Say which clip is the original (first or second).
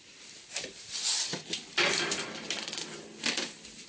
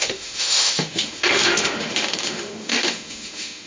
first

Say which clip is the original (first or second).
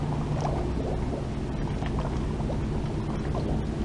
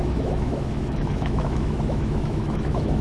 first